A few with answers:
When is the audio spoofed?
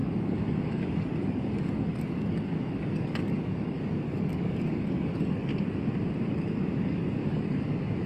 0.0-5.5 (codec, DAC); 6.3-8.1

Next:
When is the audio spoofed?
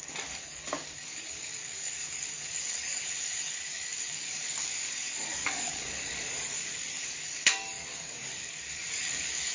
0.0-9.5 (codec, DAC)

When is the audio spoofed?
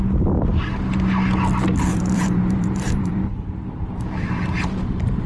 1.9-5.3 (vocoder, BigVGAN v2)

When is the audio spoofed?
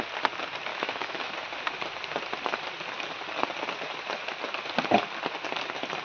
0.7-1.3 (autoencoder, DAC-VAE)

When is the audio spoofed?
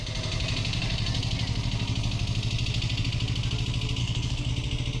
4.0-4.5 (codec, SNAC)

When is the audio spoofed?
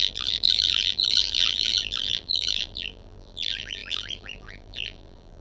0.0-5.4 (vocoder, BigVGAN v2)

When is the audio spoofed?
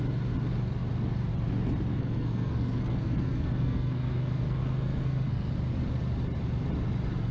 1.9-5.5 (codec, SNAC)